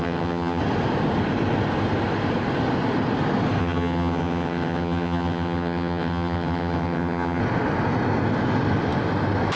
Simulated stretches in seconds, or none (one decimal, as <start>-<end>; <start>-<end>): 0.0-0.6; 3.6-7.4